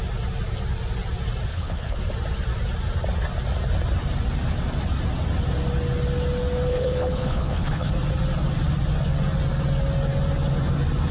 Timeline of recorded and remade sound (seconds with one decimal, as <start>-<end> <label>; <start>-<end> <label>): 0.0-1.5 recorded; 1.5-2.0 remade; 2.0-6.7 recorded; 6.7-7.9 remade; 7.9-11.1 recorded